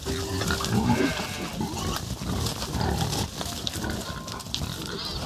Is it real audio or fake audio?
real